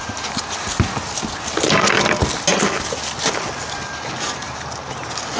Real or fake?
real